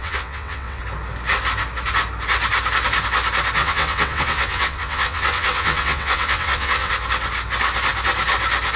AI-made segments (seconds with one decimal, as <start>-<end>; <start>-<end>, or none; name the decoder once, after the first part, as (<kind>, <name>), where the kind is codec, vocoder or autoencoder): 0.0-0.8 (vocoder, WaveNeXt); 3.6-6.9